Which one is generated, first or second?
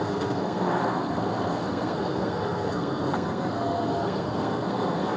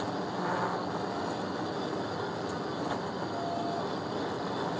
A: first